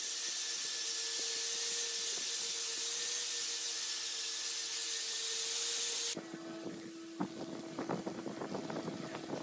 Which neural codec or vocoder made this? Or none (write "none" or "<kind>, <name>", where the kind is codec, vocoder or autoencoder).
none